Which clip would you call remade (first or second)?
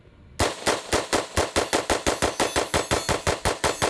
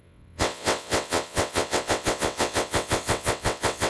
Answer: second